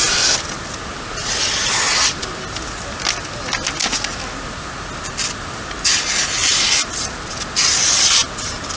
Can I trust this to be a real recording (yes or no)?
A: yes